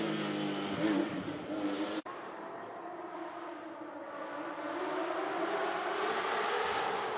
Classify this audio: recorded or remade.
remade